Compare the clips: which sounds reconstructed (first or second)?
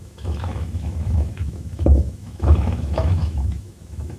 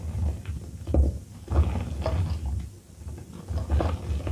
first